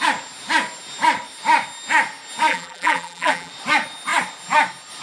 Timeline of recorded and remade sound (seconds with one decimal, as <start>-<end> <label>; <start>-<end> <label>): 0.0-2.5 recorded; 2.5-3.5 remade; 3.5-5.0 recorded